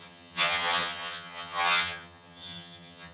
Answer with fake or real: fake